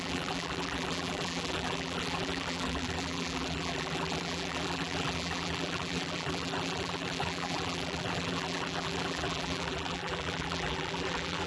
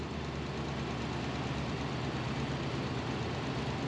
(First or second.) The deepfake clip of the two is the first